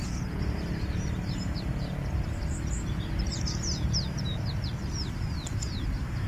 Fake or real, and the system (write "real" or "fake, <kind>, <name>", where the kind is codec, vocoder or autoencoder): fake, vocoder, BigVGAN v2